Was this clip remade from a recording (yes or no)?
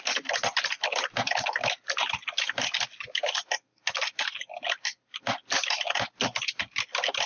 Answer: no